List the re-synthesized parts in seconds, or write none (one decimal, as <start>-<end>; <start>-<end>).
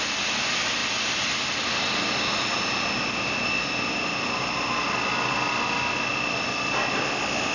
none